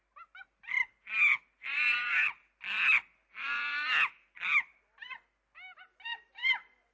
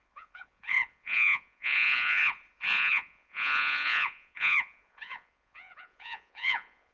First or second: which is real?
first